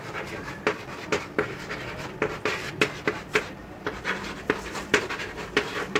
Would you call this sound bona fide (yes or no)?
no